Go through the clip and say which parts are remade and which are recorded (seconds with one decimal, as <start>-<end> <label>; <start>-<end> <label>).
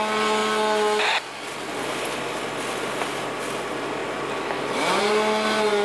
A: 0.0-5.8 recorded